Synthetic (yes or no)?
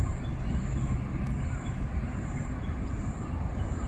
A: yes